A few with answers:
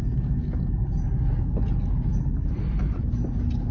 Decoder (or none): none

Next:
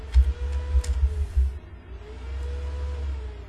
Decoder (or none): none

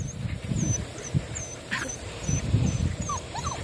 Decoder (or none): vocoder, BigVGAN v2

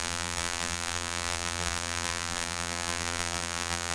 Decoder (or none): vocoder, BigVGAN v2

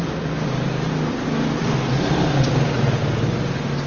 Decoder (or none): none